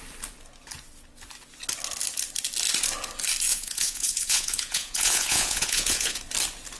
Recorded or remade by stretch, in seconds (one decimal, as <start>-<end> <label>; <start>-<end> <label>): 0.0-3.5 recorded; 3.5-6.2 remade; 6.2-6.8 recorded